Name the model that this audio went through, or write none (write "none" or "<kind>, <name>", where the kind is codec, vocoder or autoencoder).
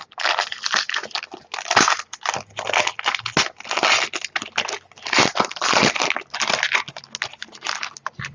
none